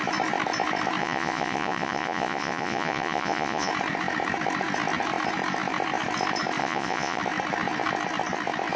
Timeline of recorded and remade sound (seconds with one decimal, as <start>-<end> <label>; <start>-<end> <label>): 0.0-1.0 recorded; 1.0-3.7 remade; 3.7-6.6 recorded; 6.6-7.2 remade; 7.2-8.8 recorded